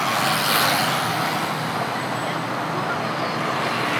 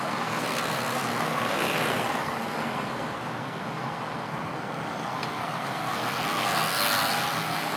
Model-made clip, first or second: second